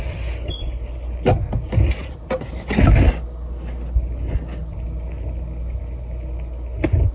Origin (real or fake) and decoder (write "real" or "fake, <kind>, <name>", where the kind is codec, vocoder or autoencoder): real